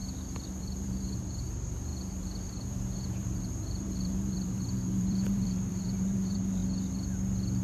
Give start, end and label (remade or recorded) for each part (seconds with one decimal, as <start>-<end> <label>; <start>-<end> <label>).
0.0-0.6 recorded; 0.6-6.6 remade; 6.6-7.6 recorded